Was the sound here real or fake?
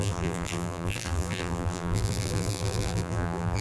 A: fake